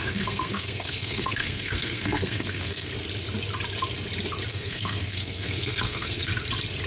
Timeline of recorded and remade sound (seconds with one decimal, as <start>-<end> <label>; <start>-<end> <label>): 0.0-2.9 remade; 2.9-4.5 recorded; 4.5-6.3 remade; 6.3-6.9 recorded